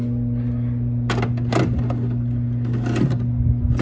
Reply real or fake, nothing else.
real